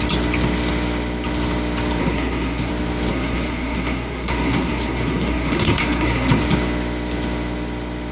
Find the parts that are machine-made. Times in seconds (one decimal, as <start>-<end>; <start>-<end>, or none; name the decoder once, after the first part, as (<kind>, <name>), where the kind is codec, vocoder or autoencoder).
2.0-2.7 (codec, SNAC); 3.1-6.4